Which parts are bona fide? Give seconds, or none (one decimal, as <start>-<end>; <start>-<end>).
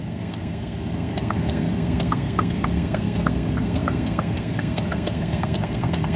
none